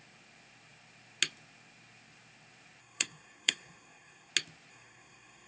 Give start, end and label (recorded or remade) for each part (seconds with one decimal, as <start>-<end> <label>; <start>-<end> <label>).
0.0-2.8 recorded; 2.8-4.3 remade; 4.3-4.7 recorded; 4.7-5.5 remade